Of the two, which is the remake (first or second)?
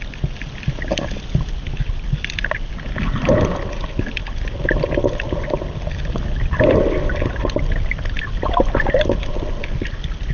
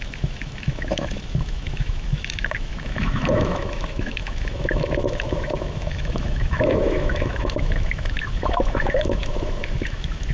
second